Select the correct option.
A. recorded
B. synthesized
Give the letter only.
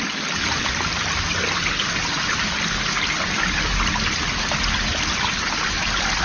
A